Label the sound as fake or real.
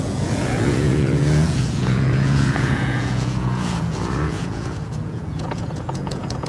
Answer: fake